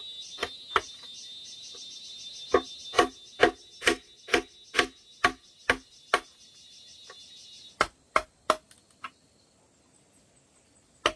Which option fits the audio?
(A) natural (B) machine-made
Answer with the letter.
A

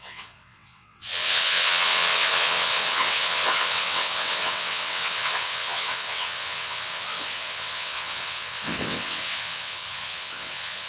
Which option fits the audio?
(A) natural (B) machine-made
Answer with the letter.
B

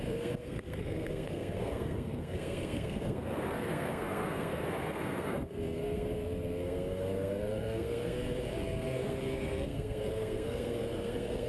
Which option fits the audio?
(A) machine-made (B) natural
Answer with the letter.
A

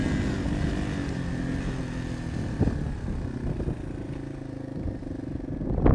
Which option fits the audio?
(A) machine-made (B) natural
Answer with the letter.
B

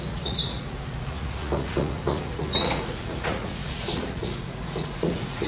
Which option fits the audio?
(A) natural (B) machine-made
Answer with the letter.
B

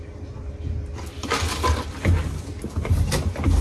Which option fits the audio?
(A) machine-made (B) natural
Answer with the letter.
B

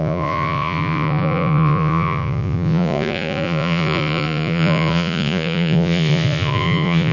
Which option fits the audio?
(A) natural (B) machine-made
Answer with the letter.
B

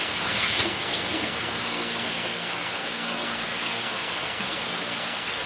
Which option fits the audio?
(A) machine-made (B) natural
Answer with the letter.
A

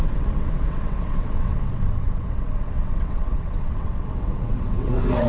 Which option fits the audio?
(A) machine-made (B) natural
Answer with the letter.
A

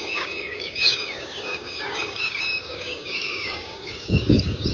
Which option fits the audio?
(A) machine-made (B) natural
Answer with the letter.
A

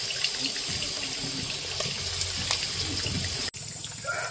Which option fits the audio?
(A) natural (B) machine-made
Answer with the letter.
A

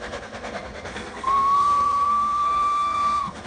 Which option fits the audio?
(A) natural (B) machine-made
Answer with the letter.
B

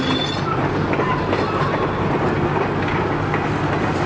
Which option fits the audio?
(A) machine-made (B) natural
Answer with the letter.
B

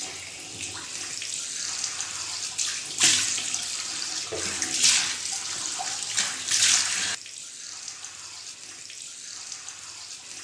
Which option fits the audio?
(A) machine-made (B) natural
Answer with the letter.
B